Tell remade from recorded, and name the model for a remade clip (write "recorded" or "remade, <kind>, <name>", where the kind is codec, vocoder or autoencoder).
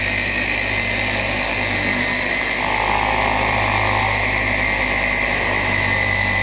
remade, vocoder, BigVGAN v2